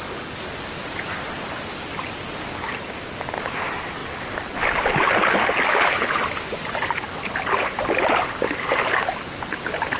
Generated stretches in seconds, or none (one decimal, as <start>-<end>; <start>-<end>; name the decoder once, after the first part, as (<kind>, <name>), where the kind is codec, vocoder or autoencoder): none